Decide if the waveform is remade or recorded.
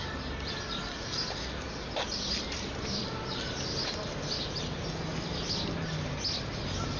recorded